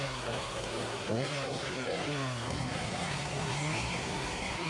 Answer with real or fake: fake